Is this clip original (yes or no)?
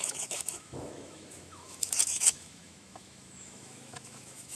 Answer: no